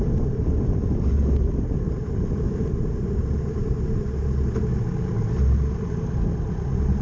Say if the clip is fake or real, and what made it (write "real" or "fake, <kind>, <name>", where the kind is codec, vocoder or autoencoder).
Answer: real